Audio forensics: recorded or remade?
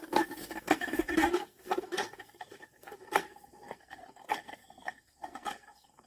remade